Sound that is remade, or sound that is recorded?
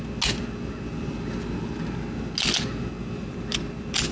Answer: recorded